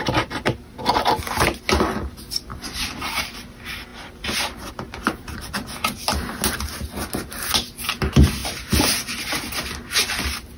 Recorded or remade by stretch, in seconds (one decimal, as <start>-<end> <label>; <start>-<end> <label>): 0.0-2.5 recorded; 2.5-3.3 remade; 3.3-8.4 recorded; 8.4-9.0 remade; 9.0-10.6 recorded